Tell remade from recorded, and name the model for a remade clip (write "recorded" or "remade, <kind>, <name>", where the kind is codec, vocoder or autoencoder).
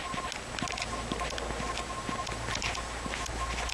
recorded